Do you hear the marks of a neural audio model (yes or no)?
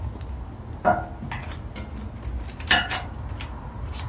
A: no